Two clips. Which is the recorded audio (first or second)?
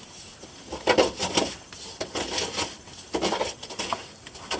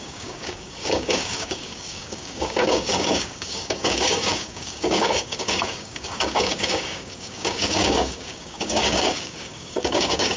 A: first